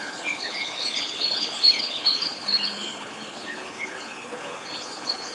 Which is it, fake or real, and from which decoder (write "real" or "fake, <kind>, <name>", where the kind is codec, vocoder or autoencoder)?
fake, codec, HILCodec